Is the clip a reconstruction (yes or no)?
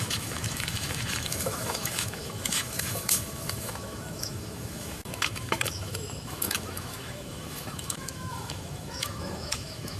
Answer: yes